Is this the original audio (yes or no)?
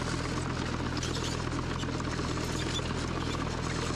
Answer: yes